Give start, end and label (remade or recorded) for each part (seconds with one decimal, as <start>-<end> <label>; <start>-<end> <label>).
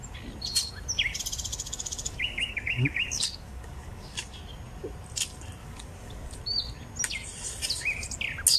0.0-1.5 recorded; 1.5-4.4 remade; 4.4-5.6 recorded; 5.6-6.4 remade; 6.4-8.6 recorded